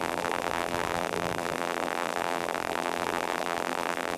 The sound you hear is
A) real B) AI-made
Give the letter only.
B